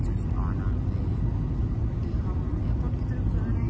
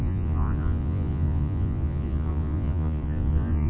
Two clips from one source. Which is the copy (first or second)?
second